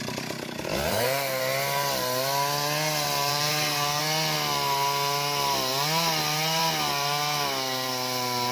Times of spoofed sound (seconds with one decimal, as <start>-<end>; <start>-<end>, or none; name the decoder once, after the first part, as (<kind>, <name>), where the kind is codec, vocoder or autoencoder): 0.9-1.4 (codec, SNAC); 3.3-4.0